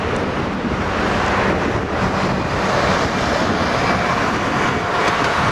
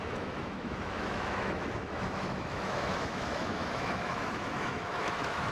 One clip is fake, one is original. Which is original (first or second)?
first